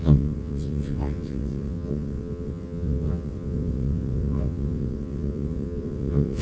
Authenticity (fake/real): fake